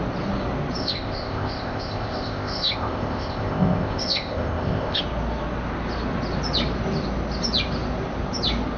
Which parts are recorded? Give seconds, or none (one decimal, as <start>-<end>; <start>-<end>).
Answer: 0.0-0.8; 5.0-8.8

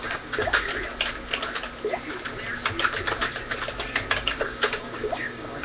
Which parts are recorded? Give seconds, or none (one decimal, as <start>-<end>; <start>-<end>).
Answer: 0.7-4.1